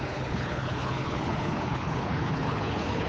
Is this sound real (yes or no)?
no